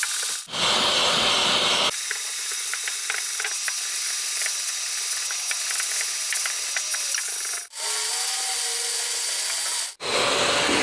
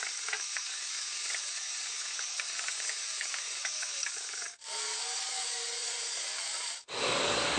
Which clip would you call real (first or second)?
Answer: first